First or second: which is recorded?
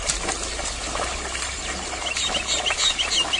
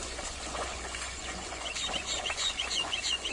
first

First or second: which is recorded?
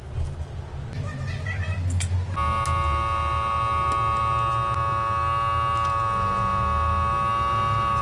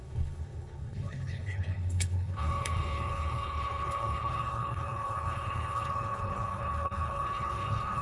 first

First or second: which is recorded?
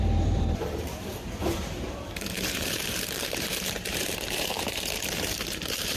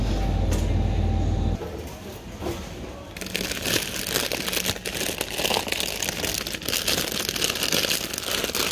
second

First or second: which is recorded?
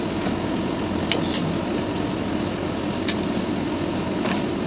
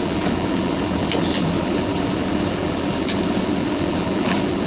first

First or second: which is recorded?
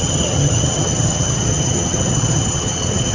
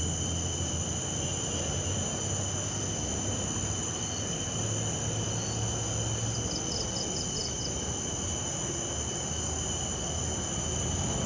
second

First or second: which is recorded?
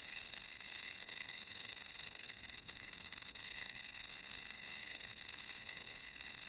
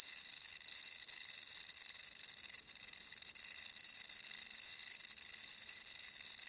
second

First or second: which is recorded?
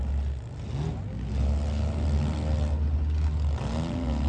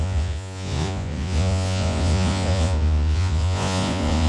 first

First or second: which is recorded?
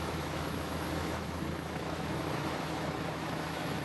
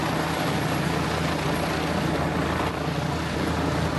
second